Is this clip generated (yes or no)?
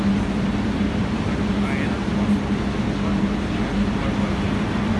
no